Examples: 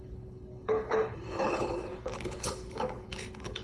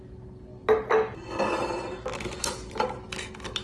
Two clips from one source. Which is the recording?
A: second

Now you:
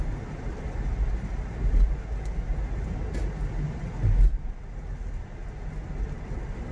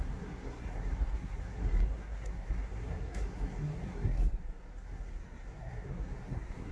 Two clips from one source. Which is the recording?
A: first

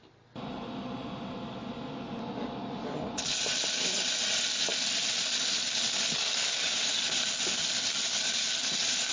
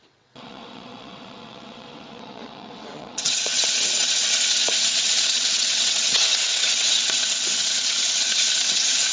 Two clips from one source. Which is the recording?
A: first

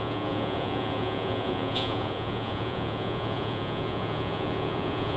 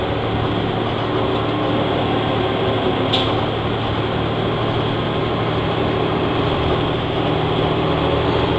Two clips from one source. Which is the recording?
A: second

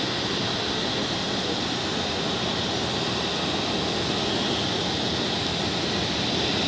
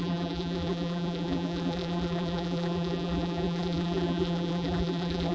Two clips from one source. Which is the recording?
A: first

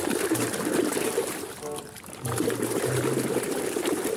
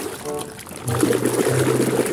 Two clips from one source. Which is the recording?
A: second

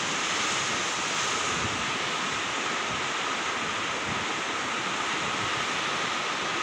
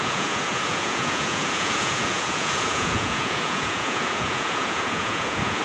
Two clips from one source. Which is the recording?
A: first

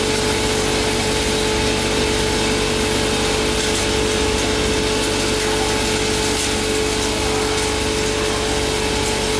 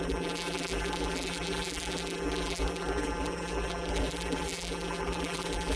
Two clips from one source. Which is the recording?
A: first